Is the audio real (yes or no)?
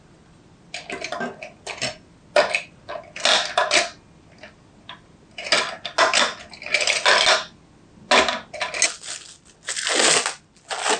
yes